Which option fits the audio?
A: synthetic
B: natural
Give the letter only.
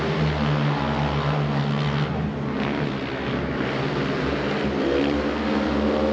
B